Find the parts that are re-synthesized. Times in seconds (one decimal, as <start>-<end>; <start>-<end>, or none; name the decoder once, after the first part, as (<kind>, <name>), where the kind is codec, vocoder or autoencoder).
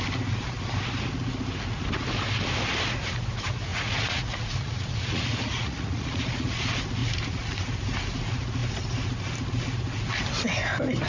3.7-6.6 (vocoder, Vocos); 7.0-7.5